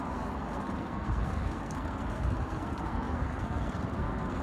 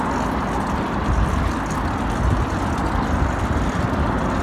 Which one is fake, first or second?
first